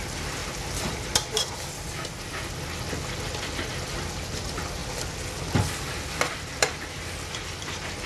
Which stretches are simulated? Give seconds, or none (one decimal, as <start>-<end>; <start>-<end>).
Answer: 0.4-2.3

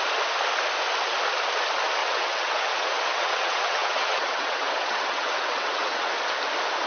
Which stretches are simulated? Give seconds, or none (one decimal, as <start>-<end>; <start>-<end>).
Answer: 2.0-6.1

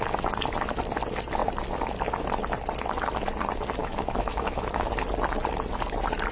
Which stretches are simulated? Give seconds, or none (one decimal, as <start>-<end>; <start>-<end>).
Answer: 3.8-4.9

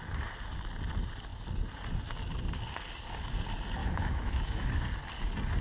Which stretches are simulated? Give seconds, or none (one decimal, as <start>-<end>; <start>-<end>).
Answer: 3.8-4.7

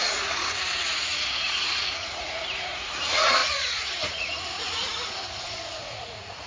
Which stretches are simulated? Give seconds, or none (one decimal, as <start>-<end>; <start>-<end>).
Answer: 0.0-6.5